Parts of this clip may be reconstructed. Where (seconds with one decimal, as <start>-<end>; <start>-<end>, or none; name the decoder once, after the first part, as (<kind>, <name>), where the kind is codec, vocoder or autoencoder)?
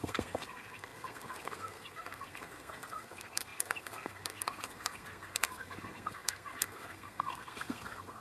0.0-8.2 (codec, SNAC)